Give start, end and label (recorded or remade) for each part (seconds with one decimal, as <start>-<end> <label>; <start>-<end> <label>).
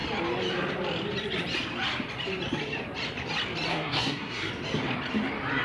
0.0-3.7 recorded; 3.7-4.5 remade; 4.5-5.6 recorded